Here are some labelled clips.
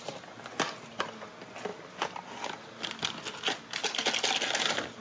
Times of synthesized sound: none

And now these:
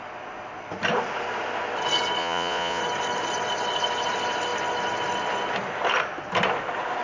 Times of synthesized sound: 2.2-2.8 (vocoder, Vocos)

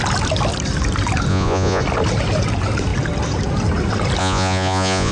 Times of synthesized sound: 1.3-1.8 (vocoder, Vocos); 4.2-5.1

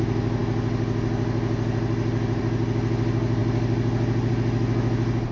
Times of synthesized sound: none

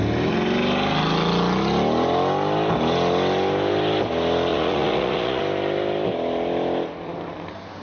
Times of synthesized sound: 4.5-5.4 (vocoder, Vocos)

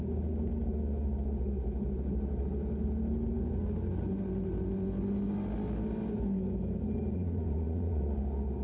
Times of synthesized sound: 7.1-8.0 (vocoder, Vocos)

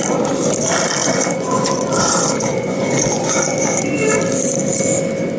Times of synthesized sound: 1.0-3.9 (vocoder, Vocos)

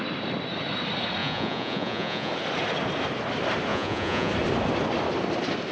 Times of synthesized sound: 1.2-2.3 (vocoder, Vocos); 3.7-4.3